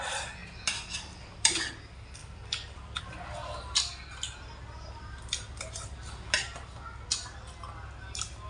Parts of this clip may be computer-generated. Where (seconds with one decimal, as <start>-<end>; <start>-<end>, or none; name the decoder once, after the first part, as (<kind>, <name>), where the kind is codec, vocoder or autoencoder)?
0.4-1.7 (vocoder, BigVGAN v2); 2.2-3.0